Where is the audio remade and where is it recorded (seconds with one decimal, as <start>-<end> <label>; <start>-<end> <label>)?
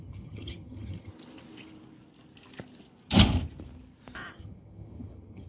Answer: 0.0-1.1 remade; 1.1-4.4 recorded; 4.4-5.5 remade